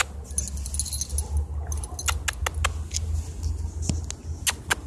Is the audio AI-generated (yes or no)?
no